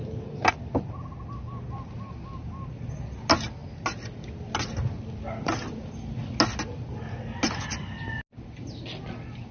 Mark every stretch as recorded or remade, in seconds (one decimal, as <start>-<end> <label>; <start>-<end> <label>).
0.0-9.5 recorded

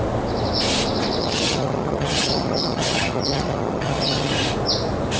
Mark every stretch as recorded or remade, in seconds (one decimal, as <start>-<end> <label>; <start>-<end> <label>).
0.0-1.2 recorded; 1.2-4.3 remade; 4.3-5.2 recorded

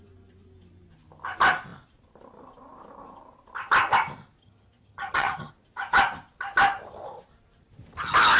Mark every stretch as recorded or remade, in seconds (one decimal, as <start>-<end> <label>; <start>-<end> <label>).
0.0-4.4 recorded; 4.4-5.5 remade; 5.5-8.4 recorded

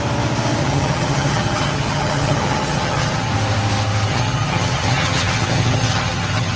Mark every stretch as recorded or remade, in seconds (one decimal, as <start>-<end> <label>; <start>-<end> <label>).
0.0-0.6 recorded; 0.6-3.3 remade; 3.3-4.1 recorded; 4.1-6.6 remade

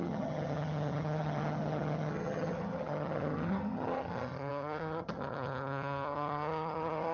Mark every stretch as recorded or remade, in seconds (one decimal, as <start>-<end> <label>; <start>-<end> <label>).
0.0-7.1 remade